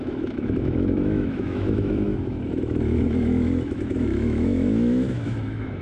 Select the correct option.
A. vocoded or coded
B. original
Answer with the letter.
A